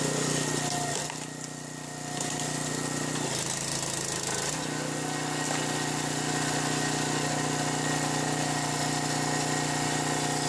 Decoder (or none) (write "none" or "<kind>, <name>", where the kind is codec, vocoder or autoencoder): none